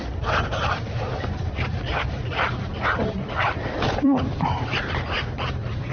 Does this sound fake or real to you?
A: fake